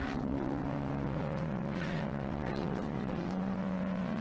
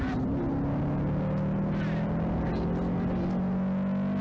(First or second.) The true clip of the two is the second